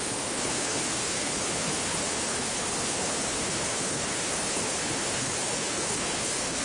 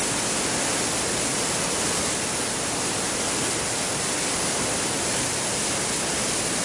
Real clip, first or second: second